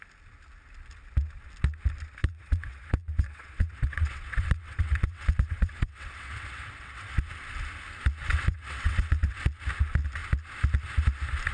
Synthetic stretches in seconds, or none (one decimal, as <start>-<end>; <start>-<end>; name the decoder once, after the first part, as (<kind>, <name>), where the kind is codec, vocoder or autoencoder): 2.2-7.2 (vocoder, WaveNeXt); 8.2-9.4